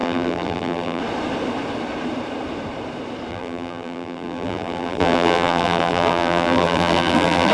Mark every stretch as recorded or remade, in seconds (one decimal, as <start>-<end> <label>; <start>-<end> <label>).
0.0-1.0 remade; 1.0-3.3 recorded; 3.3-7.5 remade

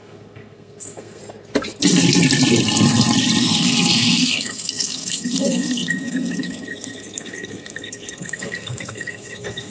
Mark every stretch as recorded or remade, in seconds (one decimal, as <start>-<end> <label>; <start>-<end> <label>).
0.0-1.2 remade; 1.2-3.4 recorded; 3.4-9.7 remade